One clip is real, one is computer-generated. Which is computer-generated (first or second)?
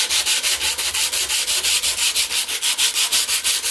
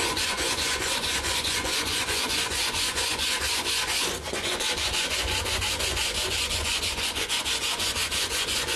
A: second